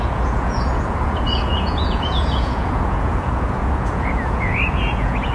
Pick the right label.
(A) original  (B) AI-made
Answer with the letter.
B